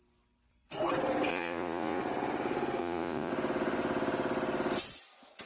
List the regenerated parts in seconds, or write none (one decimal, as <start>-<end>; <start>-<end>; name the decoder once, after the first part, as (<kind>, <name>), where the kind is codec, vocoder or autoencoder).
1.3-2.0 (vocoder, Vocos); 2.8-3.3